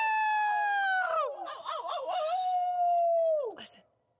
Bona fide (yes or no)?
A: yes